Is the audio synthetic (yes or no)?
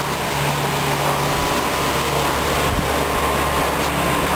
no